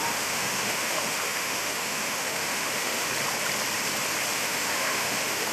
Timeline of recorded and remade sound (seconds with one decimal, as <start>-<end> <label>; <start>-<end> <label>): 0.0-3.1 remade; 3.1-4.3 recorded; 4.3-5.5 remade